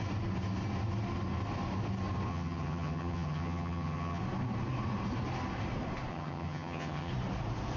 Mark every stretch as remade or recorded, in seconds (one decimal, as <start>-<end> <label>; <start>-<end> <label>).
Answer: 0.0-2.3 recorded; 2.3-4.2 remade; 4.2-6.1 recorded; 6.1-7.1 remade; 7.1-7.8 recorded